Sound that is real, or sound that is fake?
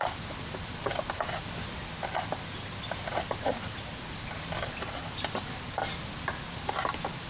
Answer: real